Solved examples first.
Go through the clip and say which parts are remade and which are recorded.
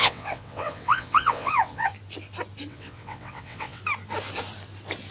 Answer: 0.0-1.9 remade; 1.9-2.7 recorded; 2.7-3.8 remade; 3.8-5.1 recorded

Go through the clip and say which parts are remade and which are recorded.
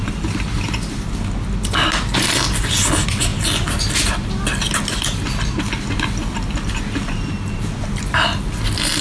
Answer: 0.0-9.0 recorded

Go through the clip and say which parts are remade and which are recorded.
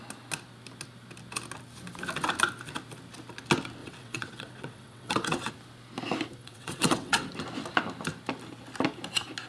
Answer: 0.0-3.8 recorded; 3.8-5.5 remade; 5.5-6.4 recorded; 6.4-7.3 remade; 7.3-9.5 recorded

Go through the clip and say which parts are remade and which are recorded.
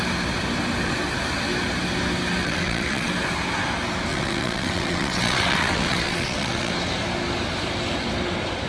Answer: 0.0-2.4 recorded; 2.4-3.1 remade; 3.1-4.1 recorded; 4.1-6.7 remade; 6.7-8.7 recorded